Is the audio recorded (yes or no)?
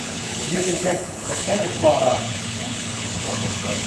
no